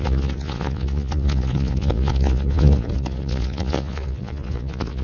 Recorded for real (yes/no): no